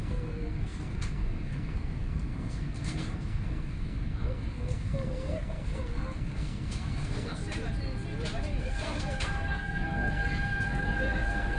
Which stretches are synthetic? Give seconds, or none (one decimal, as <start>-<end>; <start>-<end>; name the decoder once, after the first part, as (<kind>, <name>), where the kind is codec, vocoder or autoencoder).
0.0-7.4 (codec, SNAC); 8.6-11.6